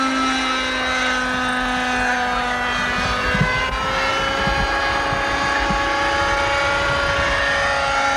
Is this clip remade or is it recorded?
recorded